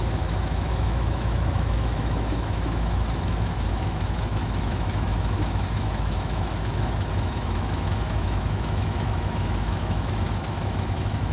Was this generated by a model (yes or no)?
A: yes